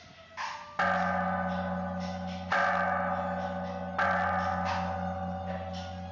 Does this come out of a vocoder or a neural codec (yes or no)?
no